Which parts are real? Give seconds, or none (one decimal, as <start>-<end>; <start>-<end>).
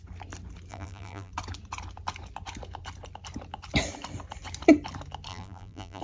0.0-0.7; 1.3-5.3